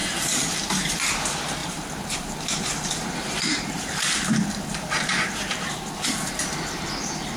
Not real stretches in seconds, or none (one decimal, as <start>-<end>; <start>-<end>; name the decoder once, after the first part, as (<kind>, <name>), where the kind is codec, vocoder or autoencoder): 0.0-0.9 (vocoder, BigVGAN v2); 1.6-5.8